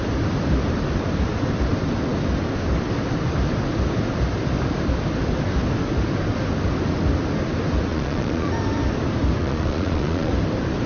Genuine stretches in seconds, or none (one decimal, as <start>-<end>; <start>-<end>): 0.0-7.9; 8.5-9.4; 10.3-10.9